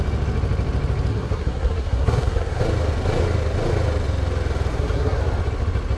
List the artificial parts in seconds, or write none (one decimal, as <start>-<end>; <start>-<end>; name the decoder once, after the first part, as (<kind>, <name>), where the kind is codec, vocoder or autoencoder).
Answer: 1.1-2.6 (codec, SNAC); 4.7-5.2